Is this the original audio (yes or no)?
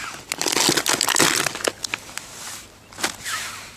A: yes